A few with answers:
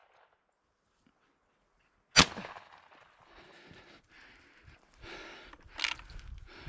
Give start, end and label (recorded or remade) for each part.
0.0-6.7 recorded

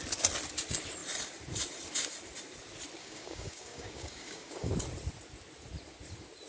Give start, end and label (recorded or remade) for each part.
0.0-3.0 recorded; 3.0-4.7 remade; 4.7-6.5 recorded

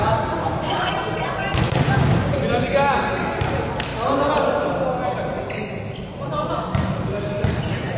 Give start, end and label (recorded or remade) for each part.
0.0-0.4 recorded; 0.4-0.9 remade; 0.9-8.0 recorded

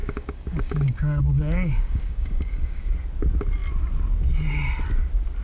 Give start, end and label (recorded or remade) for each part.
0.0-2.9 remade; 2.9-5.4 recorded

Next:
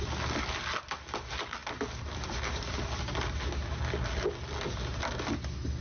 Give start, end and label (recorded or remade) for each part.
0.0-5.8 recorded

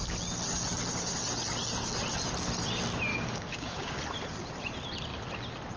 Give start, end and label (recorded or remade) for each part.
0.0-3.1 recorded; 3.1-4.0 remade; 4.0-5.8 recorded

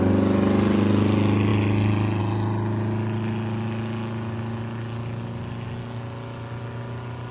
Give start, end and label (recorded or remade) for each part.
0.0-7.3 recorded

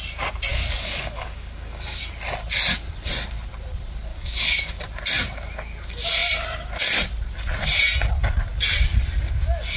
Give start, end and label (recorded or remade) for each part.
0.0-0.5 recorded; 0.5-2.0 remade; 2.0-4.1 recorded; 4.1-4.7 remade; 4.7-9.8 recorded